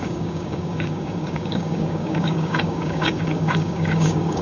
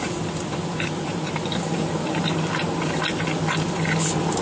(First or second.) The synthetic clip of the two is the first